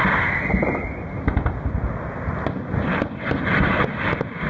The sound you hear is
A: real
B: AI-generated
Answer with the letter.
A